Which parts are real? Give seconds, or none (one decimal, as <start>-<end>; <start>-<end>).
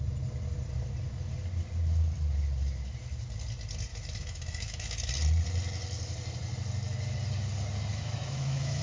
0.0-3.9; 5.1-7.9